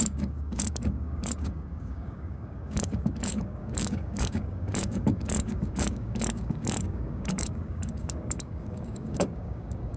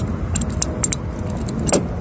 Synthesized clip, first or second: first